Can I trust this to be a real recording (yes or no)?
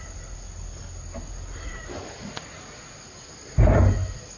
yes